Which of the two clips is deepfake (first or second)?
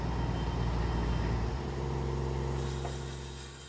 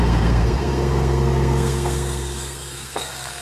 second